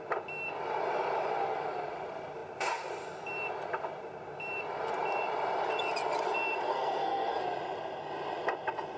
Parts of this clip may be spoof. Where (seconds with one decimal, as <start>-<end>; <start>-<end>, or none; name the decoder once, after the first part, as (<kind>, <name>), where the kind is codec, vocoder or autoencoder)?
6.7-7.4 (codec, SNAC)